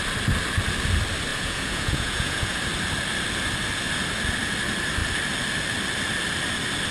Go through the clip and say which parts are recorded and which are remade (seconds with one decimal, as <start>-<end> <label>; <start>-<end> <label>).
0.0-1.3 recorded; 1.3-2.6 remade; 2.6-6.9 recorded